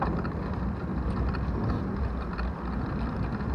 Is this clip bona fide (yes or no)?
no